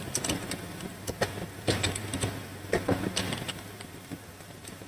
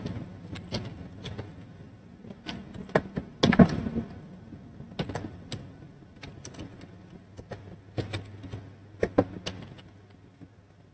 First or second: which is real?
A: second